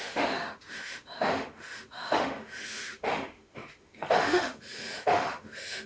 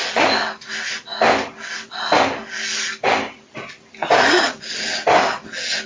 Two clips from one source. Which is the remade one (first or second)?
first